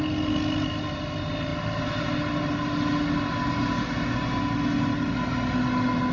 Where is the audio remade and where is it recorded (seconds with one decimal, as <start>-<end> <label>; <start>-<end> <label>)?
0.0-6.1 recorded